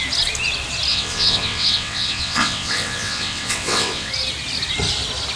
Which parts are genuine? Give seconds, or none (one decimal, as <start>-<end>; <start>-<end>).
0.0-0.9; 4.1-5.4